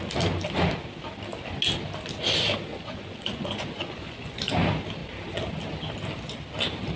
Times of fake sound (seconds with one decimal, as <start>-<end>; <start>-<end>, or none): 2.7-4.5